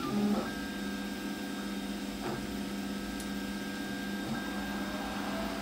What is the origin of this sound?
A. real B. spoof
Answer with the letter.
A